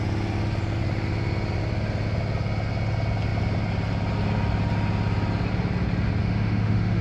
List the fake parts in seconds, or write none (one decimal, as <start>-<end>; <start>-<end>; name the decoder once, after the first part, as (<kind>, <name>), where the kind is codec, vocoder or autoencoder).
6.2-7.0 (autoencoder, DAC-VAE)